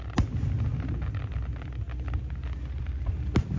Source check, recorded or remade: recorded